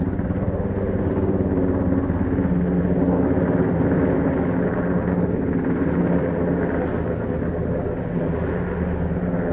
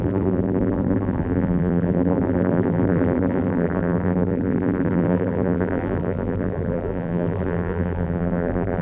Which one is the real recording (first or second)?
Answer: first